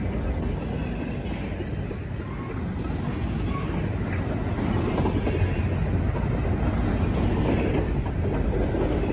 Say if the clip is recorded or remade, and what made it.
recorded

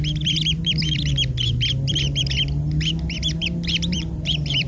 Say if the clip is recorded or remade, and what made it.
remade, vocoder, BigVGAN v2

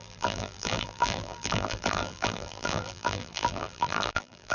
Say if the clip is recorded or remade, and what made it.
remade, vocoder, BigVGAN v2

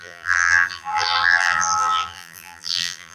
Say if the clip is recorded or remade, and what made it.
remade, vocoder, BigVGAN v2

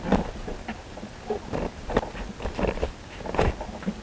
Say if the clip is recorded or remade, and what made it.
recorded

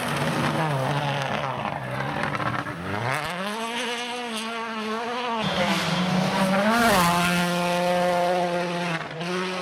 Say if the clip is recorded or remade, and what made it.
recorded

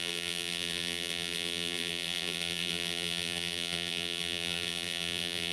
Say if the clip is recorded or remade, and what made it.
remade, vocoder, BigVGAN v2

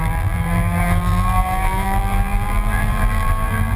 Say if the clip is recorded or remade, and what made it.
remade, vocoder, BigVGAN v2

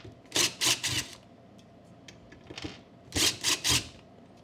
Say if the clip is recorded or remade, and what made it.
recorded